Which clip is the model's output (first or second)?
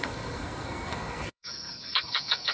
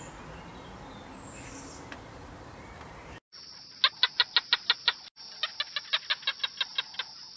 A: first